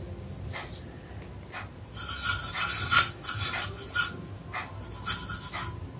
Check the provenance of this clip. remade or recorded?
recorded